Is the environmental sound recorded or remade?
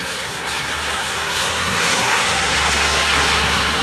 remade